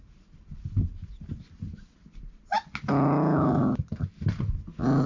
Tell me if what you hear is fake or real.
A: real